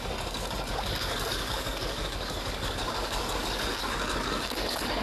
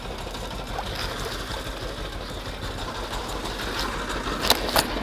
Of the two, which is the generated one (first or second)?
first